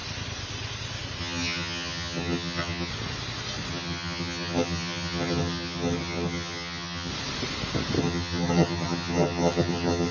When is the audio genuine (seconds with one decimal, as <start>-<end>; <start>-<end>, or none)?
0.0-1.2; 2.9-3.7; 7.1-8.0